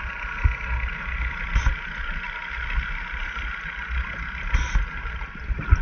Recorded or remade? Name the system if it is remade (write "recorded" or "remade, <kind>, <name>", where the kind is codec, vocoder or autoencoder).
recorded